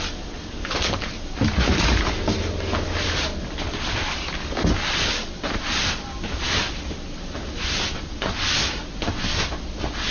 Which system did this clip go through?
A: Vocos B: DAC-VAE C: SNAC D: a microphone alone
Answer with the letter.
D